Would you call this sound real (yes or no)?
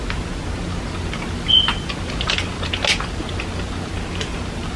yes